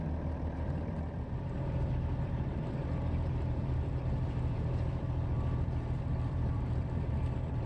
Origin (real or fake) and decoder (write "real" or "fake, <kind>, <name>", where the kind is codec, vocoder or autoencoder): fake, vocoder, BigVGAN v2